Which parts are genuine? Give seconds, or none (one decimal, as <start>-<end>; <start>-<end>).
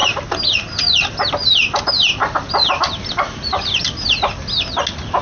0.8-2.2; 4.1-5.2